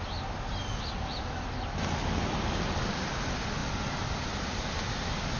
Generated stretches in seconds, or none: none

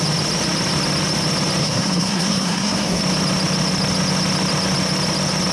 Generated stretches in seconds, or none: 1.6-3.0 (codec, SNAC)

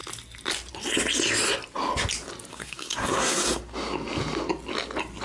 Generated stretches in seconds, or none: 2.5-3.6 (codec, SNAC)

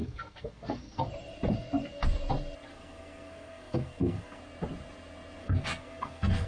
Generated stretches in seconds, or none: 0.0-1.1 (codec, SNAC); 2.7-4.4; 5.4-6.5